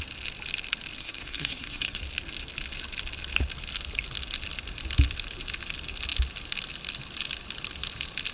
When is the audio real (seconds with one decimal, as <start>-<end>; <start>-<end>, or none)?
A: 0.0-1.0; 2.0-8.3